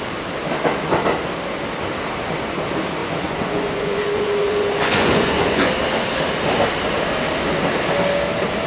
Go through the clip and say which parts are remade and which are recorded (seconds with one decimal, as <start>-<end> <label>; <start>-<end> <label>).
0.0-3.0 recorded; 3.0-5.7 remade; 5.7-8.7 recorded

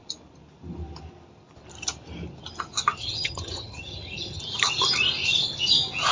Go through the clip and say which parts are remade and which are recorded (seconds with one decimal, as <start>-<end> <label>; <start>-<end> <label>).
0.0-3.0 recorded; 3.0-4.4 remade; 4.4-6.1 recorded